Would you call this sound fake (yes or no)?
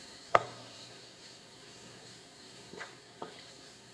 yes